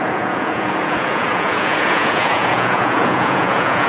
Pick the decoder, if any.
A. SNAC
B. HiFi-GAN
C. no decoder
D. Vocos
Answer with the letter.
D